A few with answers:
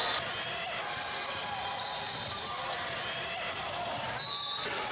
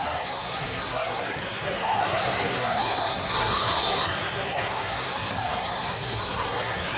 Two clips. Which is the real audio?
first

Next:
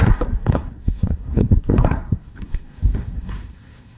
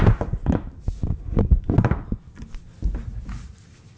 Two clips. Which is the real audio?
second